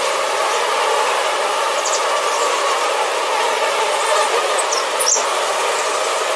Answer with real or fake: real